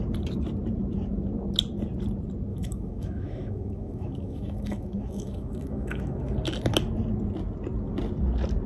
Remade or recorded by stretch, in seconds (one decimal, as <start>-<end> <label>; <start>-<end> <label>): 0.0-2.5 recorded; 2.5-6.2 remade; 6.2-8.7 recorded